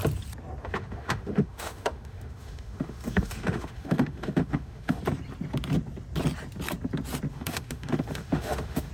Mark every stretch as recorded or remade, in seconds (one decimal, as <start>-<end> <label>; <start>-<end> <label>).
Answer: 0.0-0.6 recorded; 0.6-5.0 remade; 5.0-7.3 recorded; 7.3-8.9 remade